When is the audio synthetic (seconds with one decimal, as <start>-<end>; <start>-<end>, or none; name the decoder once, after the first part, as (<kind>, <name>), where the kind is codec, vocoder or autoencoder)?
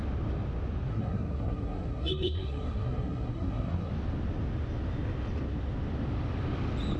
0.9-3.9 (codec, SNAC)